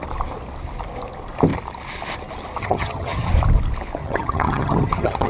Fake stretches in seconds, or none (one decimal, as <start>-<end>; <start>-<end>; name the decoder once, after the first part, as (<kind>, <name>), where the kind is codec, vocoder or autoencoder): 2.6-3.3 (vocoder, HiFi-GAN); 4.0-5.3